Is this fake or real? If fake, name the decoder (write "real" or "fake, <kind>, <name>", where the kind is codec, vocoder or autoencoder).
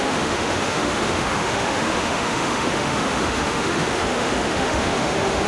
fake, autoencoder, DAC-VAE